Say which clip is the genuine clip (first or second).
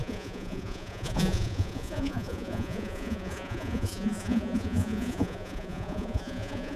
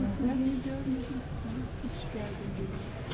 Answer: second